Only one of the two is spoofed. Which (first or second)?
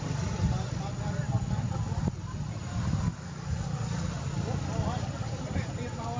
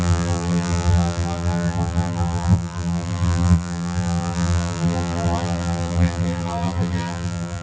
second